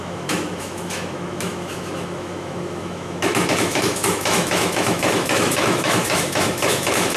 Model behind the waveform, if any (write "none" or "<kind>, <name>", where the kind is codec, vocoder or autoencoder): autoencoder, DAC-VAE